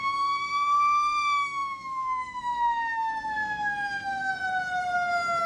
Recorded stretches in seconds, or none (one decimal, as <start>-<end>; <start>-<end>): 4.3-5.5